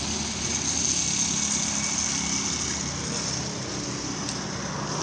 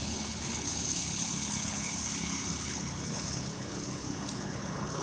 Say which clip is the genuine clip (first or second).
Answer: first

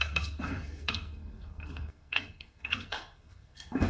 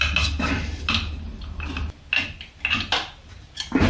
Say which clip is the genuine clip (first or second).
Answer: second